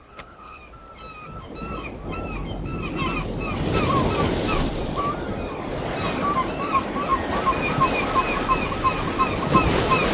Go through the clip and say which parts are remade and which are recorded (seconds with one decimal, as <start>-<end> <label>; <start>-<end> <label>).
0.0-0.6 remade; 0.6-10.1 recorded